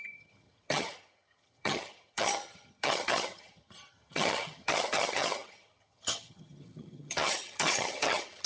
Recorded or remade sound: remade